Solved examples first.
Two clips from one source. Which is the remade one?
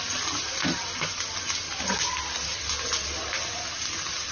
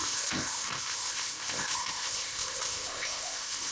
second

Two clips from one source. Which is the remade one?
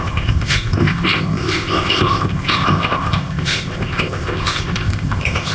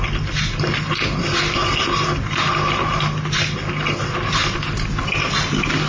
first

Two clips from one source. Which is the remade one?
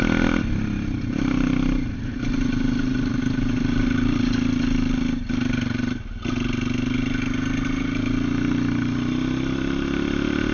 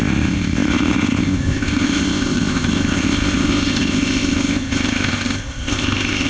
second